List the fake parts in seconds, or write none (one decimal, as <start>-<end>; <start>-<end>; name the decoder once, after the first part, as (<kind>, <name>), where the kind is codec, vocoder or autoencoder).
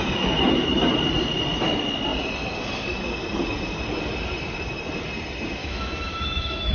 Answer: 5.6-6.7 (autoencoder, DAC-VAE)